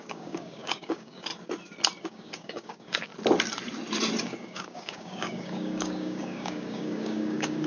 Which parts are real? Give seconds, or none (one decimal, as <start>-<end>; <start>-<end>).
1.3-2.0; 3.1-4.2